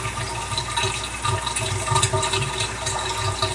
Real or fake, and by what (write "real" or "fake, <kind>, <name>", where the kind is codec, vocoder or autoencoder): real